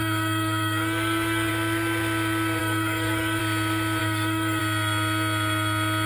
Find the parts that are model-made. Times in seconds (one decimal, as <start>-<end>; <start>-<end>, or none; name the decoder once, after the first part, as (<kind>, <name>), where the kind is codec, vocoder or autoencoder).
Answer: 0.0-1.5 (codec, DAC); 2.6-3.4; 4.0-4.6